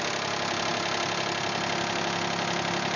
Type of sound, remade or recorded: recorded